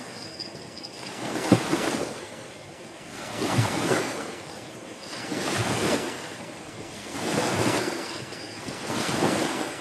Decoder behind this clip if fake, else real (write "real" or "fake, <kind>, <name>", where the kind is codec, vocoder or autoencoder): fake, codec, SNAC